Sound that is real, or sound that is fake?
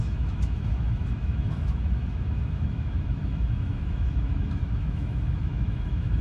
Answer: fake